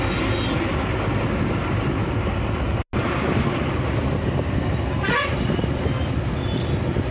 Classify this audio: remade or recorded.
recorded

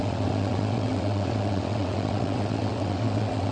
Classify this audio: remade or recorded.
remade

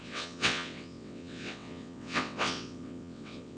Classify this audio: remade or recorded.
remade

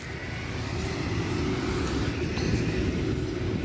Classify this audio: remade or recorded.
recorded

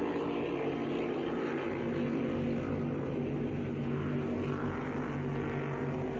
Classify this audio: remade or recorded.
recorded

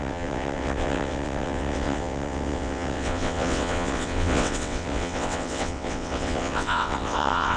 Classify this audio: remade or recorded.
remade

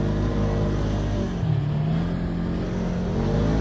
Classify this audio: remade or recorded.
recorded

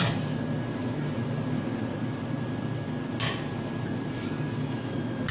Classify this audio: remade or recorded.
recorded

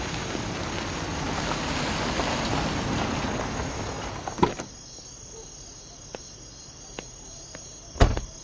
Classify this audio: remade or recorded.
recorded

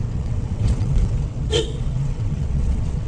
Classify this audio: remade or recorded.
remade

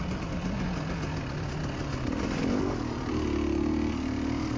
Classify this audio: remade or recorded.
recorded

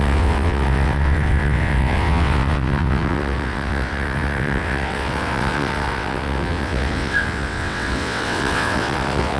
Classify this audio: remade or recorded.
remade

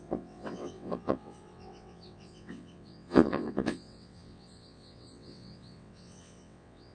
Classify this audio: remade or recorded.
remade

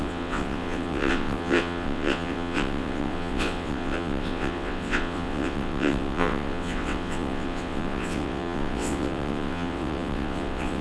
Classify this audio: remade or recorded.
remade